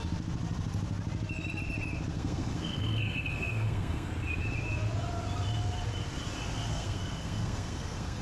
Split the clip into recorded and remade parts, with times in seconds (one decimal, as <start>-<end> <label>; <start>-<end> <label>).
0.0-2.1 recorded; 2.1-4.1 remade; 4.1-6.7 recorded; 6.7-8.2 remade